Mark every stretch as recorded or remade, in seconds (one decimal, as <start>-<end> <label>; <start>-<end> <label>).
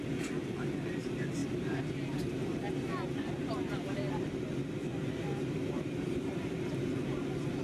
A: 0.0-4.9 recorded; 4.9-6.7 remade; 6.7-7.6 recorded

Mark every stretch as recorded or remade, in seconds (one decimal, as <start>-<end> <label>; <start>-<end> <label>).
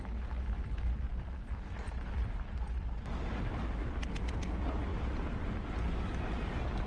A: 0.0-4.9 recorded; 4.9-5.5 remade; 5.5-6.9 recorded